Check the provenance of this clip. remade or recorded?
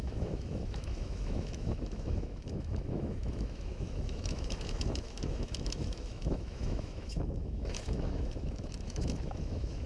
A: remade